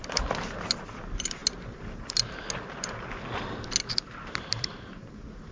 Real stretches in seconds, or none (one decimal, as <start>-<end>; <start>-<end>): 0.0-5.5